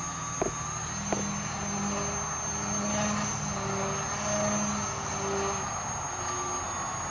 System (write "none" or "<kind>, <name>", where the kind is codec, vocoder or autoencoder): none